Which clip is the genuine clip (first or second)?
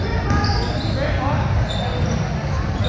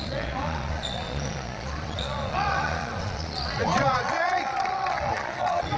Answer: first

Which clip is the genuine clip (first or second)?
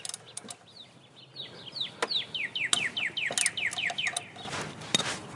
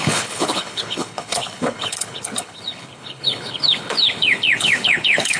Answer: first